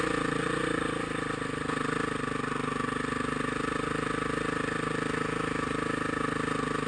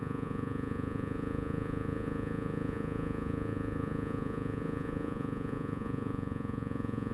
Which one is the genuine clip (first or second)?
first